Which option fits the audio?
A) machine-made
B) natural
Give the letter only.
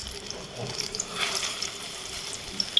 A